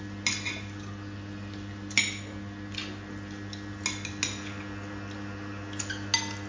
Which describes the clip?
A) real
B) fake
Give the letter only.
A